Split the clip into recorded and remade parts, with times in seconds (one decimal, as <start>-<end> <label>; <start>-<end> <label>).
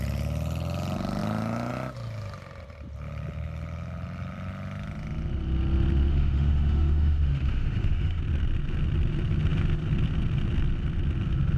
0.0-6.1 recorded; 6.1-8.2 remade; 8.2-11.6 recorded